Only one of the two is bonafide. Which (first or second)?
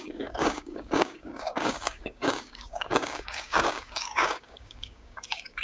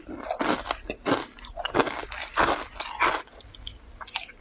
second